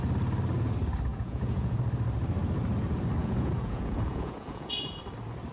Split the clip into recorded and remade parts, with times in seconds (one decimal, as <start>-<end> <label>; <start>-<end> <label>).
0.0-1.1 recorded; 1.1-1.8 remade; 1.8-3.2 recorded; 3.2-5.0 remade; 5.0-5.5 recorded